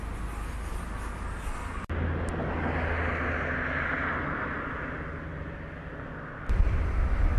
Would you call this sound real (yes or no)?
yes